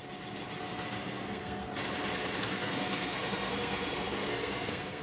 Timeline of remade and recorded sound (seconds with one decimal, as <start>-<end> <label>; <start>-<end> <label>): 0.0-0.6 recorded; 0.6-1.7 remade; 1.7-2.4 recorded; 2.4-5.0 remade